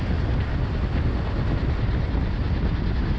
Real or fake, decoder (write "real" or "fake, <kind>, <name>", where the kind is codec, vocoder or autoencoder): real